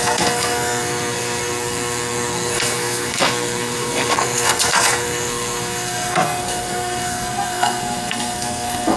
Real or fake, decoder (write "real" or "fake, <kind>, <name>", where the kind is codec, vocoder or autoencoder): fake, codec, SNAC